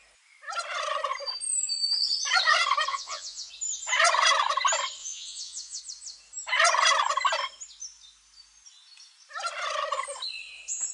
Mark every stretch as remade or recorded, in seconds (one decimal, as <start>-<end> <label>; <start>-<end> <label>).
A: 0.0-2.9 recorded; 2.9-3.5 remade; 3.5-5.0 recorded; 5.0-5.8 remade; 5.8-10.9 recorded